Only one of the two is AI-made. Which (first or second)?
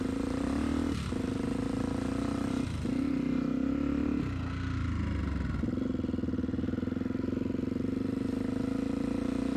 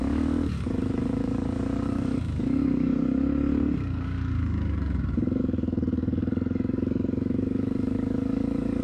second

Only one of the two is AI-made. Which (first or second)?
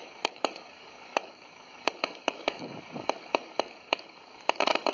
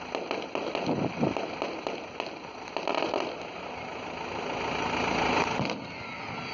first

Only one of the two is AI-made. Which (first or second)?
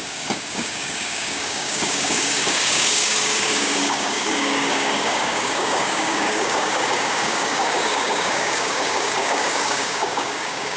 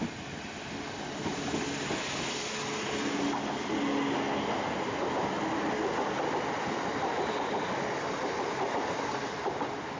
first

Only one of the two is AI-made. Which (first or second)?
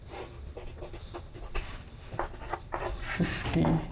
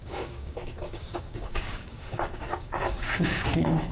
second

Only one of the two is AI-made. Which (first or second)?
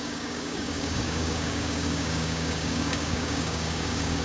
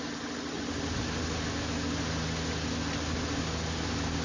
first